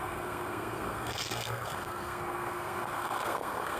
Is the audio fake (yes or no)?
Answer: yes